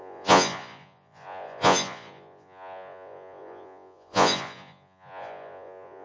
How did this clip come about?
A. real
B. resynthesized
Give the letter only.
B